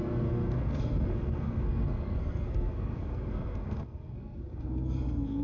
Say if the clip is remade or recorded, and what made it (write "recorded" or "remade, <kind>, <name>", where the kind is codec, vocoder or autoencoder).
remade, codec, SNAC